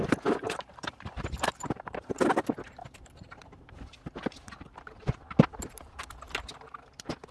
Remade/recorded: remade